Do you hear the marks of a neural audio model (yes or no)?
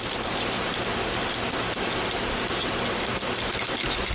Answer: no